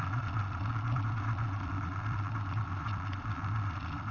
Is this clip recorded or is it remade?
remade